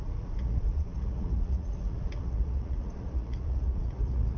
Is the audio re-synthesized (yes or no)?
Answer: yes